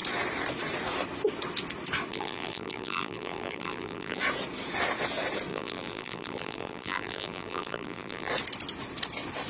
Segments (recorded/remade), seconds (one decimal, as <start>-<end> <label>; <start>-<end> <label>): 0.0-2.1 recorded; 2.1-4.2 remade; 4.2-5.5 recorded; 5.5-8.3 remade; 8.3-9.5 recorded